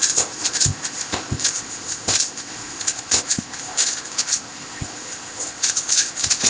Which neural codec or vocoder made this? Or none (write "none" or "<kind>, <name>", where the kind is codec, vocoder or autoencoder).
codec, ZipCodec